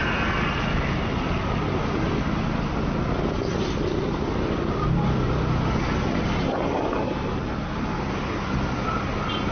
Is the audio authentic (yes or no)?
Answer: yes